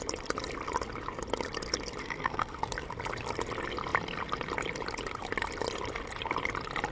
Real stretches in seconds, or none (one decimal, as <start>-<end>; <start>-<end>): 0.0-2.0; 2.6-6.9